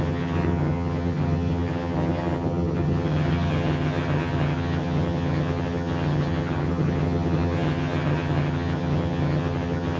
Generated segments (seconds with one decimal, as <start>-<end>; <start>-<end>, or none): 0.0-10.0